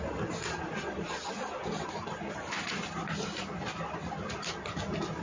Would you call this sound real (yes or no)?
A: yes